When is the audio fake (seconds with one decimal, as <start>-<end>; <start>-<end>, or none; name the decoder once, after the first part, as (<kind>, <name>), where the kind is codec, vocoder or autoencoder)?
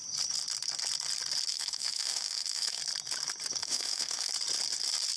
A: 1.5-2.8 (autoencoder, DAC-VAE); 3.6-4.3